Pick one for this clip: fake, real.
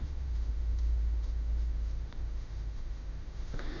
fake